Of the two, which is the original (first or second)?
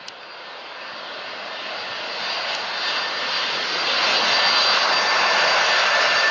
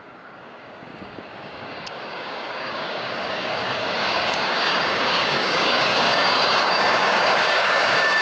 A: first